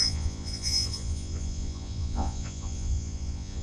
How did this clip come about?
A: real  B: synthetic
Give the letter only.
B